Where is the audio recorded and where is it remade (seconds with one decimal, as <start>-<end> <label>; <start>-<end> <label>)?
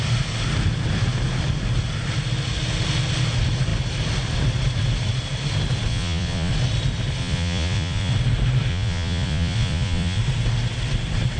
0.0-5.9 recorded; 5.9-6.5 remade; 6.5-7.2 recorded; 7.2-8.1 remade; 8.1-8.7 recorded; 8.7-10.2 remade; 10.2-11.4 recorded